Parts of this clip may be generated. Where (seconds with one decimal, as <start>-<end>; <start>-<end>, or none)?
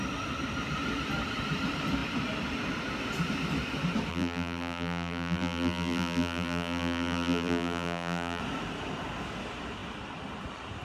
4.1-8.4